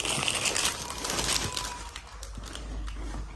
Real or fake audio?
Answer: real